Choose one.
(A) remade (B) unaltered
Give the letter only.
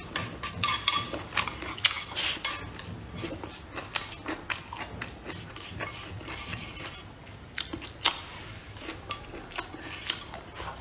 B